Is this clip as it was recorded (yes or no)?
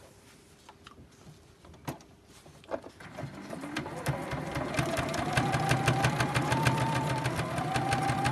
yes